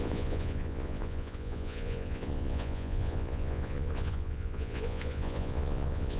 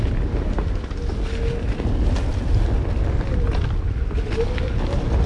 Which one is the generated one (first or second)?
first